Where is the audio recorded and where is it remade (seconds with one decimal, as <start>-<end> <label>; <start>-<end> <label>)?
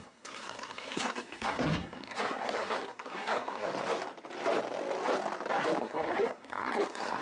0.0-3.7 remade; 3.7-5.8 recorded; 5.8-7.2 remade